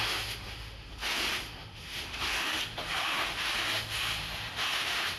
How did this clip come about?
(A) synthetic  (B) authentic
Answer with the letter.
A